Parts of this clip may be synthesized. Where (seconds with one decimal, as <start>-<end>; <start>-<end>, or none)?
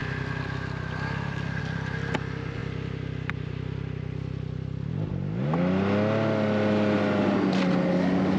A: none